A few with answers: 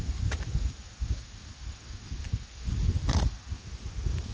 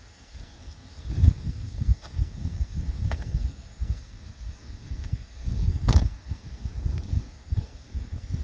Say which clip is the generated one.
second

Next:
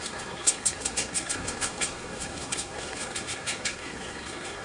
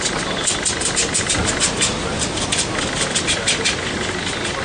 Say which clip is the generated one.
first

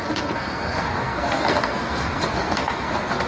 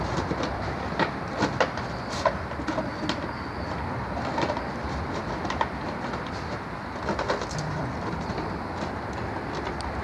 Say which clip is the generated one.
first